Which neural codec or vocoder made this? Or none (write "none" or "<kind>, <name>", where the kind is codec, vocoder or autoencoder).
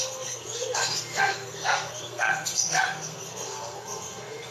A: codec, SNAC